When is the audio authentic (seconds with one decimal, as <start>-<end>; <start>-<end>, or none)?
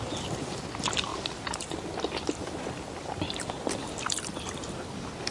0.0-5.3